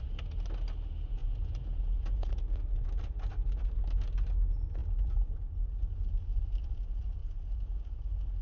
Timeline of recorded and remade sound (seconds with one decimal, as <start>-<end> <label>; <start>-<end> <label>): 0.0-1.2 recorded; 1.2-2.4 remade; 2.4-7.2 recorded; 7.2-8.0 remade; 8.0-8.4 recorded